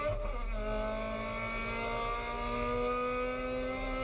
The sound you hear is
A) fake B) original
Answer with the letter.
B